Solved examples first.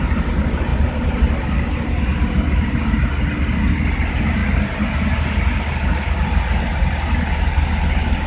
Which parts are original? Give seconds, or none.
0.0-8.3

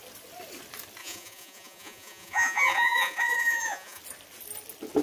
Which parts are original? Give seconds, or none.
0.0-1.0; 4.0-5.0

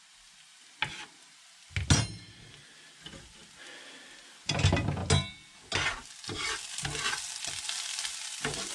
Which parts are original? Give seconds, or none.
0.0-8.7

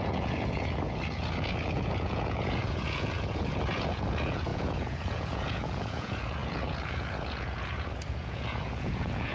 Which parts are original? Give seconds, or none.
none

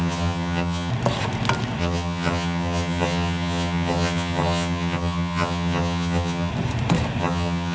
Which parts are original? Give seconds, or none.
0.9-1.8; 6.5-7.2

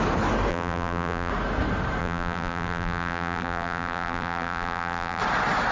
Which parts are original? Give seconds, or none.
0.0-0.5; 1.3-2.0; 5.2-5.7

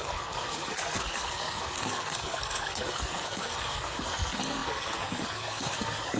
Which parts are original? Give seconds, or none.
none

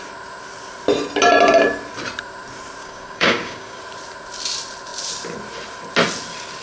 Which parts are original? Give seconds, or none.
0.0-2.8; 3.8-6.6